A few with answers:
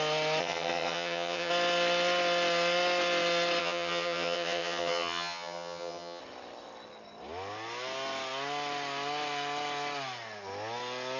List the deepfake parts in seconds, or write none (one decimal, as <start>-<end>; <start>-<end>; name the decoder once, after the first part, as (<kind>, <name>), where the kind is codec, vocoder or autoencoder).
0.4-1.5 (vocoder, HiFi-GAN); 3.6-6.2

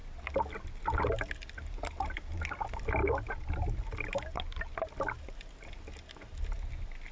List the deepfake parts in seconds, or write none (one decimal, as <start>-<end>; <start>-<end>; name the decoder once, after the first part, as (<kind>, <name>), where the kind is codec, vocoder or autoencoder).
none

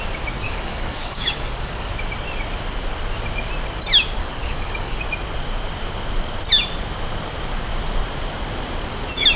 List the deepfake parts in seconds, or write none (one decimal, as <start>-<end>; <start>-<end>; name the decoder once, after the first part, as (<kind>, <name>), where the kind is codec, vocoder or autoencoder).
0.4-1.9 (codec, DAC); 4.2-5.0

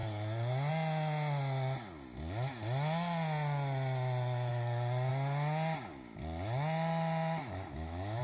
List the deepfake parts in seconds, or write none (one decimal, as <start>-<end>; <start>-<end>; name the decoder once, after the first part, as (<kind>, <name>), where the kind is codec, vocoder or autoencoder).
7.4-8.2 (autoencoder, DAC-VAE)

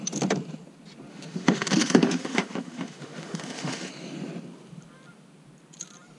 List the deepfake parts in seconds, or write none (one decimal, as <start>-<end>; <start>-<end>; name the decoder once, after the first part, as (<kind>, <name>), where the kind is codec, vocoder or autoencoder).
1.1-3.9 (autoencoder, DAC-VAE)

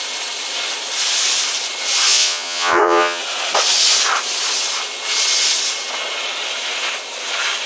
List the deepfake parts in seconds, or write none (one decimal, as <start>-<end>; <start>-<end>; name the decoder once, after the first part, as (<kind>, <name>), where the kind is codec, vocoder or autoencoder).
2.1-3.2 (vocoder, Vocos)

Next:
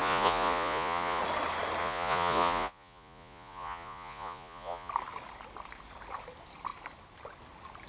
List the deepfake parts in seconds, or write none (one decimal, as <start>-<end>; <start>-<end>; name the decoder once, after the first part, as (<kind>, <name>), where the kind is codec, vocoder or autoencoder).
0.0-1.2 (vocoder, Vocos); 1.8-4.9

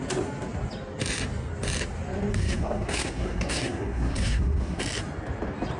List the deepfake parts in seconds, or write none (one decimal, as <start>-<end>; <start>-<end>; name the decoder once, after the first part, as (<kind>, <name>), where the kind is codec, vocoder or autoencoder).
2.3-4.8 (codec, SNAC)